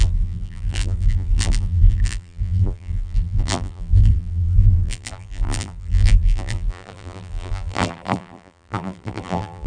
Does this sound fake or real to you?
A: fake